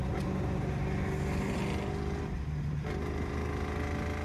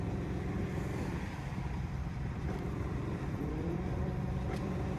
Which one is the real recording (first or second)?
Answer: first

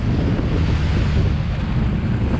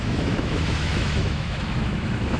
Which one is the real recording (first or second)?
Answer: first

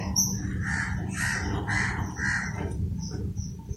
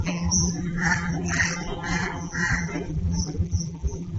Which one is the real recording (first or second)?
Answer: first